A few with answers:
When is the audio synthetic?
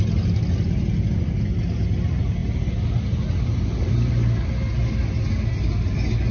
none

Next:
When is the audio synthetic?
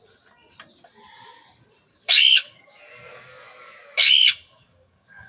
1.9-5.3 (codec, DAC)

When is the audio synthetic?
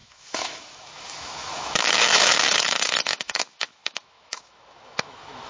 0.0-5.5 (autoencoder, DAC-VAE)